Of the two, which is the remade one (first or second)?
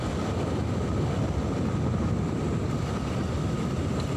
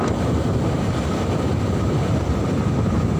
second